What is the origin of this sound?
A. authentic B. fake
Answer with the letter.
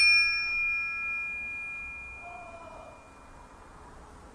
A